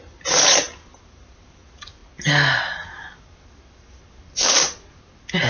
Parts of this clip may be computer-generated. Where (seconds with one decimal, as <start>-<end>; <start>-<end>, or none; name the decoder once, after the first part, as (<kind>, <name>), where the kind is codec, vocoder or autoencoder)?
0.0-2.0 (vocoder, BigVGAN v2)